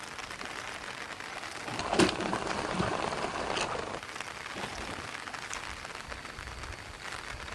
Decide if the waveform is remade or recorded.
recorded